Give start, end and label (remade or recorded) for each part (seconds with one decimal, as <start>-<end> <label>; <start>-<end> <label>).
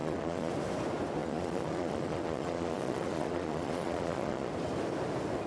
0.0-0.5 remade; 0.5-1.2 recorded; 1.2-4.5 remade; 4.5-5.5 recorded